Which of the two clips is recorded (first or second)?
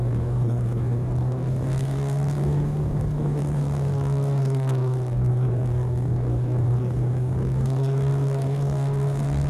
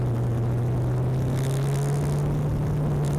second